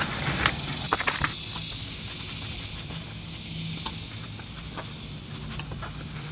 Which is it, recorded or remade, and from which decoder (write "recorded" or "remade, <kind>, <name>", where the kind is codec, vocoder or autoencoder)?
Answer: recorded